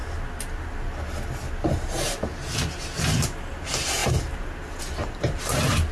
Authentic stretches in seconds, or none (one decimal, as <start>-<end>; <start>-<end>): 0.0-5.9